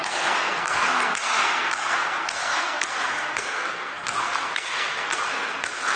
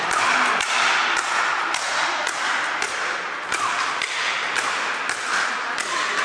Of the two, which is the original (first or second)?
second